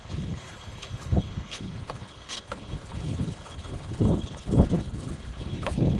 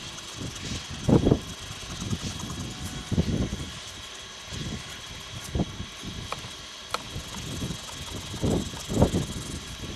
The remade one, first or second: first